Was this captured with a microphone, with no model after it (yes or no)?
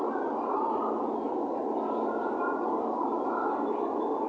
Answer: yes